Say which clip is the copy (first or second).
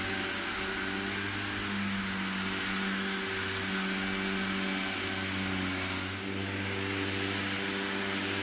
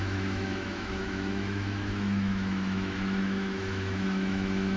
second